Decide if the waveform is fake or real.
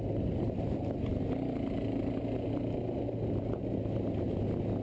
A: real